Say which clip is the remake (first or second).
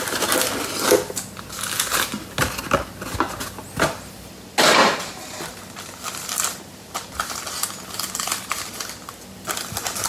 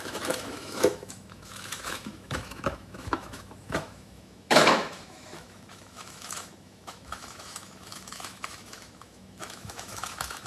second